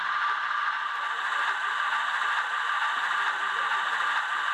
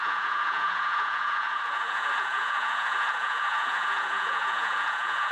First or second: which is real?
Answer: first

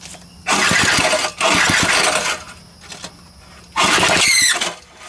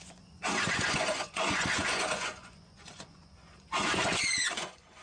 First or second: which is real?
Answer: first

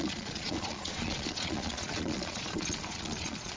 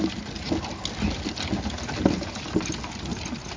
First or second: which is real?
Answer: second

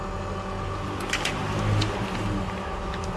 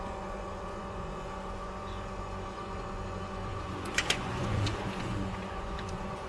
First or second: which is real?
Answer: first